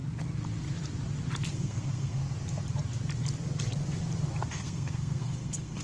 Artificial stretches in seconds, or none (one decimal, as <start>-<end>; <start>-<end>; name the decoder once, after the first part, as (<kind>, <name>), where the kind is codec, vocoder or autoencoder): 1.5-2.2 (codec, SNAC); 4.5-5.8